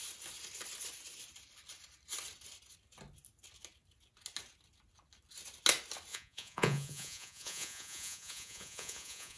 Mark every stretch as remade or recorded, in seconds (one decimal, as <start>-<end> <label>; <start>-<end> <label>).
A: 0.0-6.1 recorded; 6.1-9.4 remade